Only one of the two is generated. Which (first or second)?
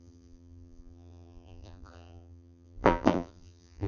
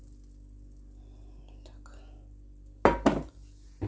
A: first